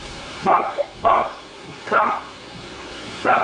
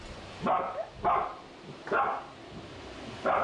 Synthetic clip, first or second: first